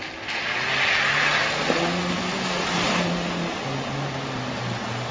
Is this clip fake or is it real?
real